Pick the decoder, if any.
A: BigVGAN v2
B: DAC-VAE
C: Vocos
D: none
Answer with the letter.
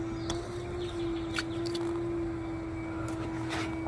D